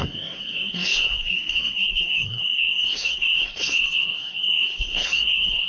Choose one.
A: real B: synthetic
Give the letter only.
B